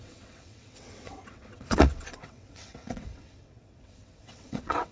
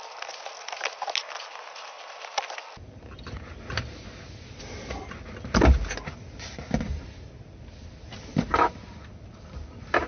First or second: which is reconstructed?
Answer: first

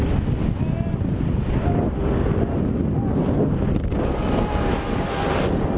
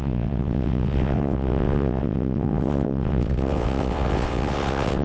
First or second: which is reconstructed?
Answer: second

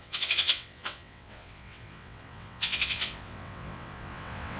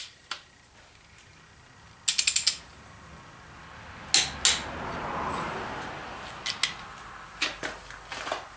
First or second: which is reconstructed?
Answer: first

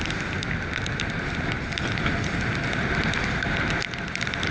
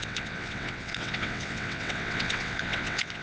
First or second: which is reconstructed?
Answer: second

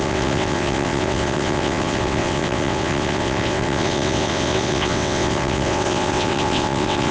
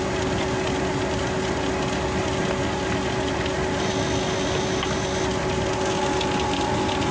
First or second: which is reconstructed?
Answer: first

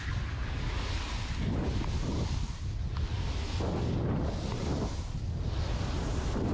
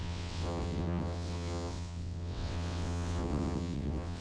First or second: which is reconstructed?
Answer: second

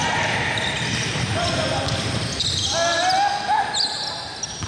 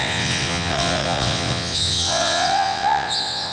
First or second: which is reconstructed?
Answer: second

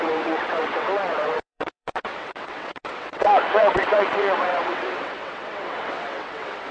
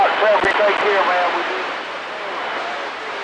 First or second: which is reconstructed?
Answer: first